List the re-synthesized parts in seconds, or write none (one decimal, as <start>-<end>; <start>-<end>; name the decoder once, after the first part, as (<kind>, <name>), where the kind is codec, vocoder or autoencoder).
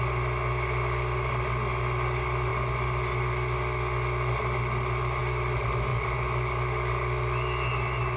none